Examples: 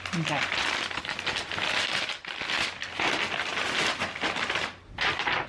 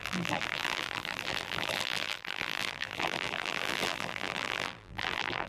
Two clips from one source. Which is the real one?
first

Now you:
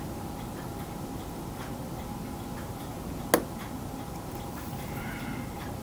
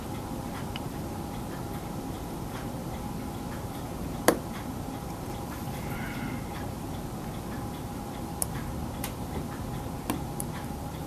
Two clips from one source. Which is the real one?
first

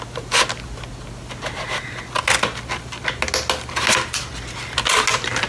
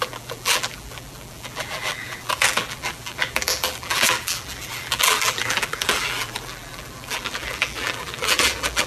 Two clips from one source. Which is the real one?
first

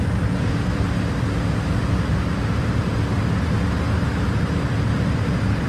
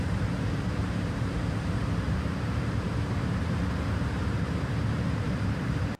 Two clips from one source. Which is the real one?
first